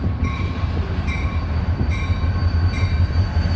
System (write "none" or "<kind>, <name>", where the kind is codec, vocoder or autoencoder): vocoder, BigVGAN v2